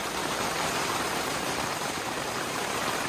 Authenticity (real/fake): fake